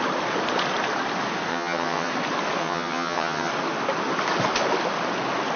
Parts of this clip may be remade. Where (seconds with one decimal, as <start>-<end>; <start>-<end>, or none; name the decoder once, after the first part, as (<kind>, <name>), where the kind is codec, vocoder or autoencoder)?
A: 1.5-2.1 (vocoder, HiFi-GAN); 2.6-3.5